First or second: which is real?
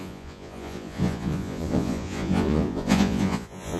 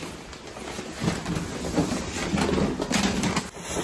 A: second